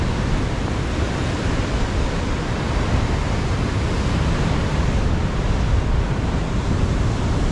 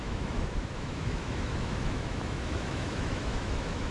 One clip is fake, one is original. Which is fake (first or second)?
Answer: second